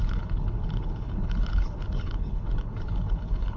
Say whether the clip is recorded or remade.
remade